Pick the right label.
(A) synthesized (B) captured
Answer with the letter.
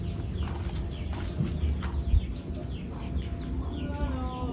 B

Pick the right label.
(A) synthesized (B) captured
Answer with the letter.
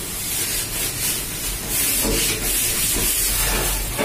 B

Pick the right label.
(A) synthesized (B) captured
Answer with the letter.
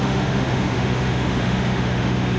A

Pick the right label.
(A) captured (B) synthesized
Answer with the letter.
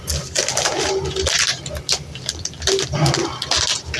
A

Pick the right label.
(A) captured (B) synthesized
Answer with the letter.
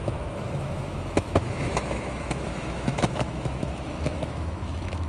B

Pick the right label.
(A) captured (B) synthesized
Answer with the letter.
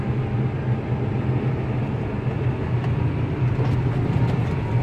A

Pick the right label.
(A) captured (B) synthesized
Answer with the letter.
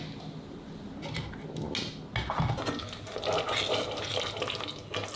A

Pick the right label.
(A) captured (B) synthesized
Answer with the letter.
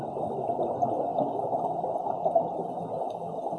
A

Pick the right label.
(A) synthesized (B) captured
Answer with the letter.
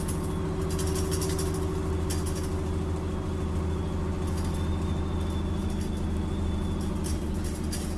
B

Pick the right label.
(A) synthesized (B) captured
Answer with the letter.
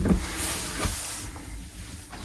B